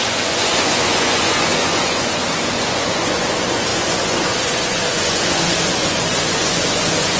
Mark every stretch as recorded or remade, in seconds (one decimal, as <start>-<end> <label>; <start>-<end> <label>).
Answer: 0.0-7.2 remade

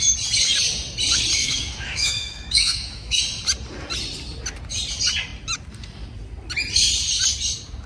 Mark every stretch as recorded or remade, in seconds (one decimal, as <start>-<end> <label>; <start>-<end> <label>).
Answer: 0.0-1.4 recorded; 1.4-3.2 remade; 3.2-7.9 recorded